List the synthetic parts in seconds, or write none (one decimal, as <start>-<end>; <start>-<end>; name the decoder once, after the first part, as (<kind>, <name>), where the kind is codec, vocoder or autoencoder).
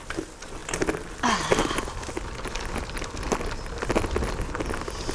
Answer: none